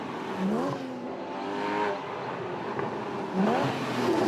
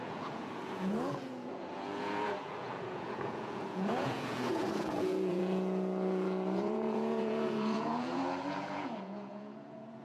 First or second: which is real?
first